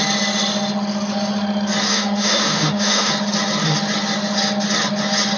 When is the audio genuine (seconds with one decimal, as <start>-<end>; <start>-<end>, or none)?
0.0-1.9; 3.1-5.4